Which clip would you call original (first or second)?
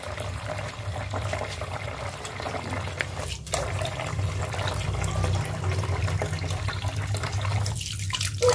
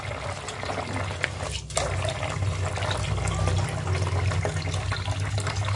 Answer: second